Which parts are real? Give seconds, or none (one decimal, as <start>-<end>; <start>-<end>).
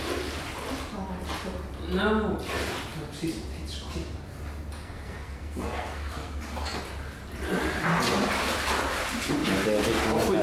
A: 0.0-4.8; 6.8-10.4